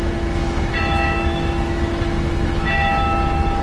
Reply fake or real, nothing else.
fake